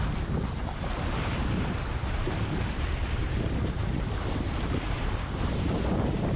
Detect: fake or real fake